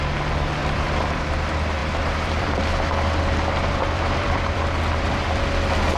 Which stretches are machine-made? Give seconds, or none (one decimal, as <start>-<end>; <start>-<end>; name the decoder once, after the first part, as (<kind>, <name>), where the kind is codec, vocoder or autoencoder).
0.6-1.2 (vocoder, BigVGAN v2); 1.8-5.4